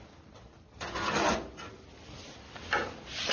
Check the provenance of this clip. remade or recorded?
recorded